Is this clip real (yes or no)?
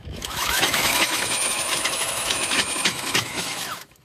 no